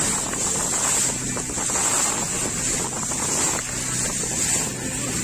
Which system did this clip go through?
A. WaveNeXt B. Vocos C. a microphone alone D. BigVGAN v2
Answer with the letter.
C